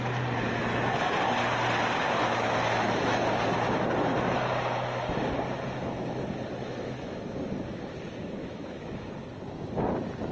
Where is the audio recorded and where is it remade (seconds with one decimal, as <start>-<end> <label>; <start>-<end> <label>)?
0.0-2.2 recorded; 2.2-3.2 remade; 3.2-6.6 recorded; 6.6-7.2 remade; 7.2-8.4 recorded; 8.4-9.1 remade; 9.1-10.3 recorded